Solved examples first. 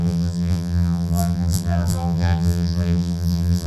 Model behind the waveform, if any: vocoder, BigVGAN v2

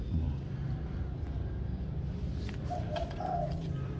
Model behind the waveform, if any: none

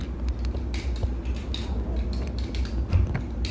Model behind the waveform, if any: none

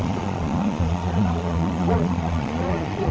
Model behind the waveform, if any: vocoder, Vocos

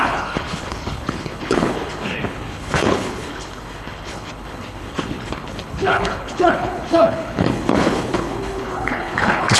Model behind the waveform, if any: codec, HILCodec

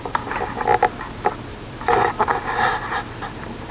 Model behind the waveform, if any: none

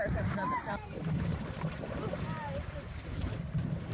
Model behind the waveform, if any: vocoder, BigVGAN v2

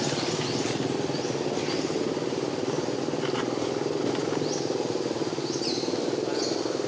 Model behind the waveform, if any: none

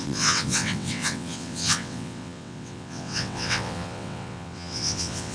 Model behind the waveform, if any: vocoder, WaveNeXt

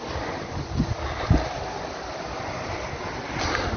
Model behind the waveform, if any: none